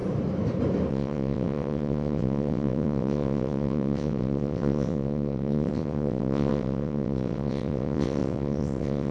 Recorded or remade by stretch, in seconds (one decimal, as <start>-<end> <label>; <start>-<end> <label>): 0.0-0.9 recorded; 0.9-9.1 remade